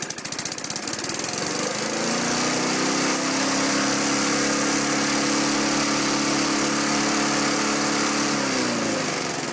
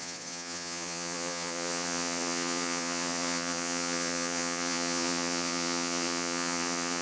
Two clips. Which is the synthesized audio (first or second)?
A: second